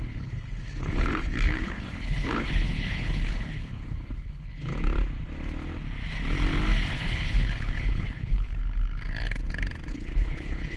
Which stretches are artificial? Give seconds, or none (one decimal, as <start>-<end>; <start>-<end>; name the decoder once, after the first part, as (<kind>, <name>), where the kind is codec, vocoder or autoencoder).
0.0-4.7 (codec, HILCodec); 6.9-8.6; 9.9-10.8